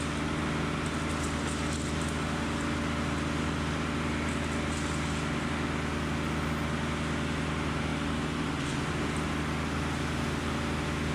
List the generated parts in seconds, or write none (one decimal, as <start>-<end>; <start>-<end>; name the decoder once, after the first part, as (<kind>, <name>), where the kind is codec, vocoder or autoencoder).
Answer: none